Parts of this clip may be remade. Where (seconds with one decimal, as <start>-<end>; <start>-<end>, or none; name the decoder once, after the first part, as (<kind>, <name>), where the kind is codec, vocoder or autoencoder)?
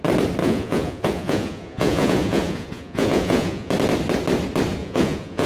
0.4-3.7 (vocoder, Vocos); 4.8-5.5